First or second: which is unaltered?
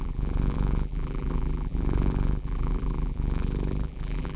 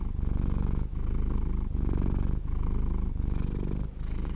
second